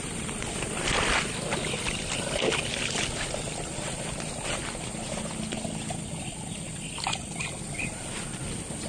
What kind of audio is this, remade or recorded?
recorded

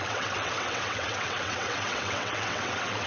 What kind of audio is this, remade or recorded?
remade